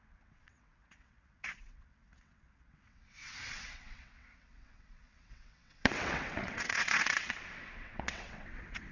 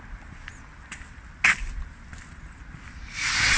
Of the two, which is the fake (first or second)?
first